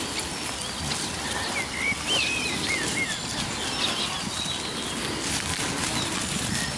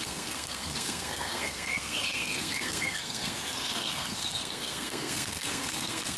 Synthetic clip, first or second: second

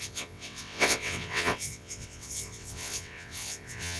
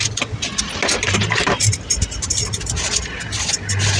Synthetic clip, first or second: first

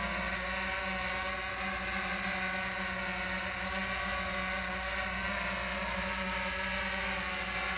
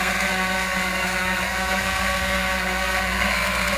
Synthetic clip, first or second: second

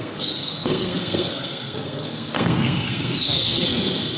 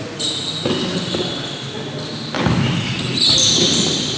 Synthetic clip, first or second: first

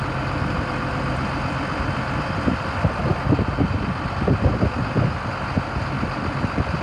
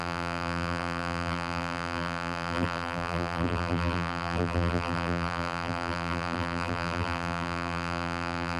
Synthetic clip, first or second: second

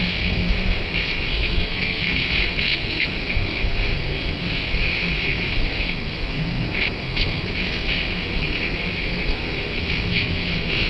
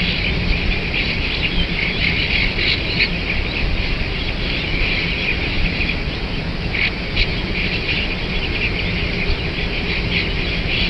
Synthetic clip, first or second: first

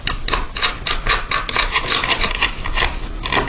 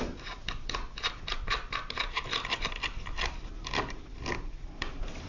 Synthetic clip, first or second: second